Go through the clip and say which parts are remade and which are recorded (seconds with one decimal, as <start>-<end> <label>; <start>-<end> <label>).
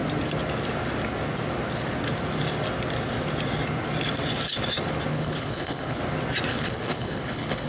0.0-5.1 recorded; 5.1-6.0 remade; 6.0-6.5 recorded; 6.5-7.7 remade